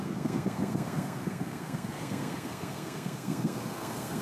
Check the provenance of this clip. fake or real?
fake